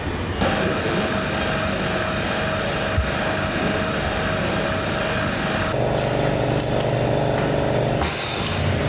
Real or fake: real